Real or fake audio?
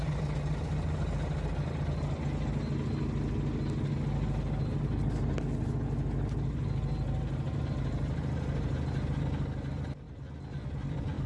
real